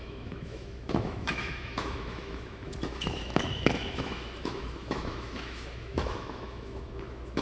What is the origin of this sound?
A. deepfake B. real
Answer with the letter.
A